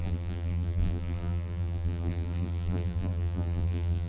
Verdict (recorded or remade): remade